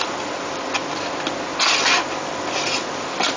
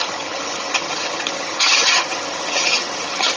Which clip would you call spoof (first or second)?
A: second